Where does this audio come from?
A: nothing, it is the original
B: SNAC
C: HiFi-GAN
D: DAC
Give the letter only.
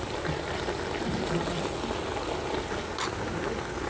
A